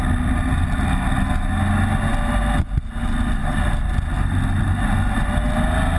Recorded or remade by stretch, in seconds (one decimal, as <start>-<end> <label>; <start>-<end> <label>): 0.0-6.0 recorded